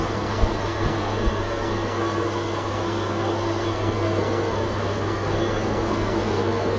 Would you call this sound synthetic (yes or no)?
yes